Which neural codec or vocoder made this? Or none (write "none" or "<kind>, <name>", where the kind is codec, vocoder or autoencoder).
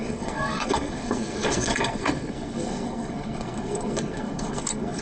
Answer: codec, SNAC